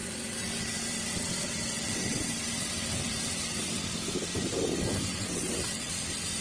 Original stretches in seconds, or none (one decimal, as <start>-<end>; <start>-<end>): 3.8-5.1; 5.9-6.4